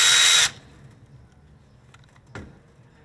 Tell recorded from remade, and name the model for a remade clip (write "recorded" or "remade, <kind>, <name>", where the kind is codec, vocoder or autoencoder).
recorded